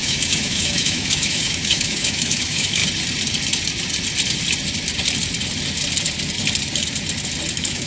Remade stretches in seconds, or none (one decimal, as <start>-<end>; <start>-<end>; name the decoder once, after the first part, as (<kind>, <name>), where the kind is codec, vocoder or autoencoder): 0.0-2.8 (autoencoder, DAC-VAE); 7.5-7.9